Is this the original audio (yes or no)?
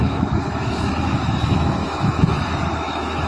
no